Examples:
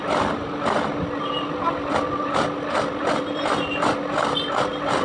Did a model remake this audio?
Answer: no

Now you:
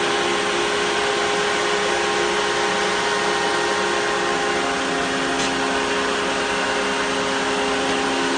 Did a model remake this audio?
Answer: no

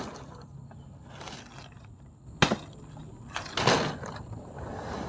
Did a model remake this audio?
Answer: no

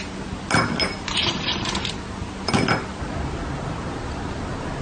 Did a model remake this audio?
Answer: no